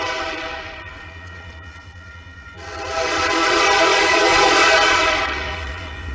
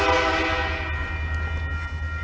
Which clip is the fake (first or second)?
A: first